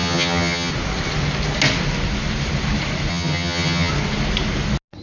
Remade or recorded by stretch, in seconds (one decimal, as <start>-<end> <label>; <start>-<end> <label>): 0.0-0.7 remade; 0.7-3.1 recorded; 3.1-3.9 remade; 3.9-5.0 recorded